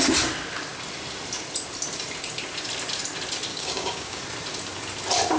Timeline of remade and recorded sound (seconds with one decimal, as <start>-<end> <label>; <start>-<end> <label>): 0.0-3.5 recorded; 3.5-4.2 remade; 4.2-5.4 recorded